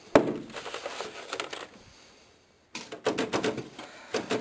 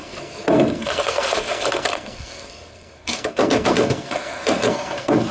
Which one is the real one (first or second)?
first